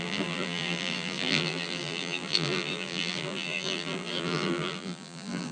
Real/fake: fake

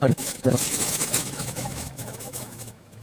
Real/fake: fake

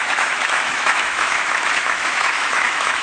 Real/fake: fake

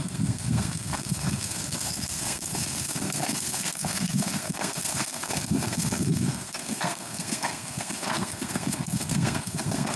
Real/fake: fake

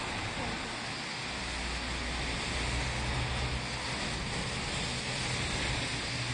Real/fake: real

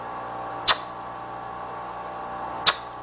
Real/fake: real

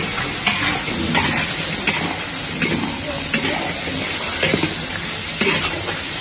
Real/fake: real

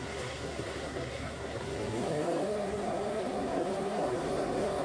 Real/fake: fake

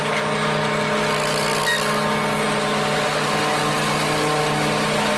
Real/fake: real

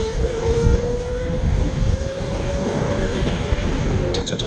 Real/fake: fake